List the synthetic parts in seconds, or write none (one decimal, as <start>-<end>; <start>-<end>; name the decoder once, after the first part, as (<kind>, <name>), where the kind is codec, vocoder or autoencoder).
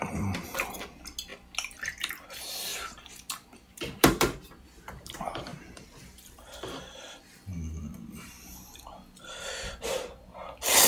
2.7-5.0 (vocoder, BigVGAN v2); 5.5-7.2